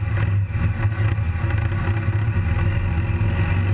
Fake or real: real